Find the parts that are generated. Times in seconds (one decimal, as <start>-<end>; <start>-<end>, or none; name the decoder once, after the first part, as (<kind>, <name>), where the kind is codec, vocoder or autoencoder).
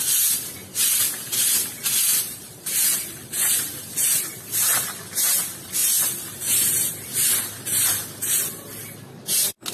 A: 2.1-2.8 (vocoder, BigVGAN v2); 5.8-7.3